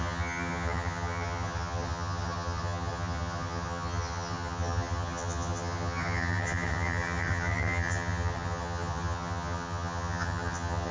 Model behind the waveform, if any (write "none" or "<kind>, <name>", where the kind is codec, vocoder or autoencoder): vocoder, HiFi-GAN